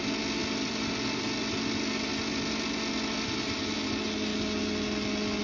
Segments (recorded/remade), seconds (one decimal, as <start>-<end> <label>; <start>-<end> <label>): 0.0-5.4 recorded